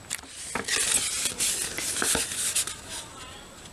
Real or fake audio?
real